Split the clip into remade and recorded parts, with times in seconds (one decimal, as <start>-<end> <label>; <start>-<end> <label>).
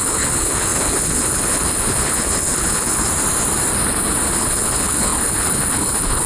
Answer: 0.0-3.0 remade; 3.0-4.3 recorded; 4.3-6.3 remade